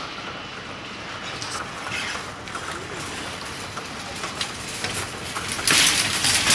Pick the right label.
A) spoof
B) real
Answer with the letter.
B